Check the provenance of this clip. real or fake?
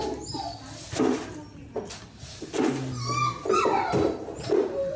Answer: real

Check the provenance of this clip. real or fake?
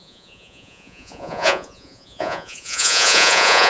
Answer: fake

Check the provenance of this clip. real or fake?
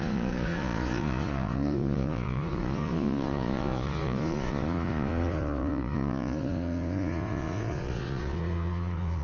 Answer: fake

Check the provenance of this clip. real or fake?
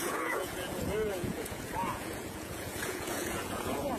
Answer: fake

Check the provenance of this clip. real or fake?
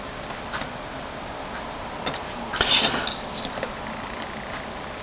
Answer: real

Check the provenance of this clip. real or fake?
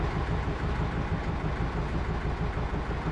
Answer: real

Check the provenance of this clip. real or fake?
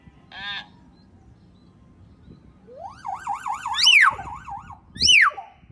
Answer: real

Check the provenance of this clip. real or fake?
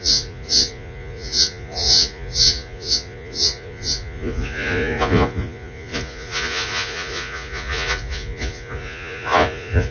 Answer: fake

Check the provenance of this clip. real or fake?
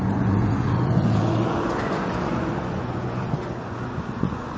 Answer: fake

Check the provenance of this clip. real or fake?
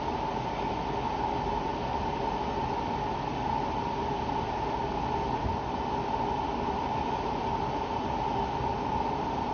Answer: real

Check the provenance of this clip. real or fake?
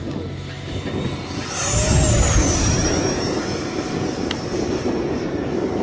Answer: real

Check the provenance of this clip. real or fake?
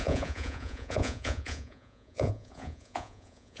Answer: fake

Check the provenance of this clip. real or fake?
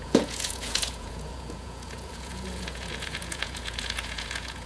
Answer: fake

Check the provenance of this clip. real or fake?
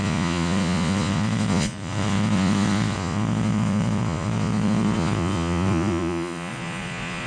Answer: fake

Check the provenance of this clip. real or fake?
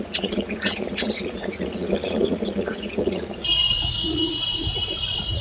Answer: fake